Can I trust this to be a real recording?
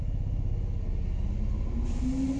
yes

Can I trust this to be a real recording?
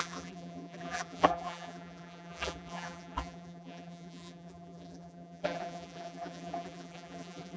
no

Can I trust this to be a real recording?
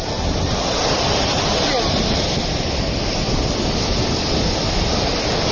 yes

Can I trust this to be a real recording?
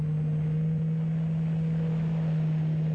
yes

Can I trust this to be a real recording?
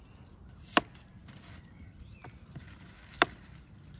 yes